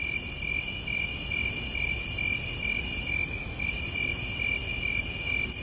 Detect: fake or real real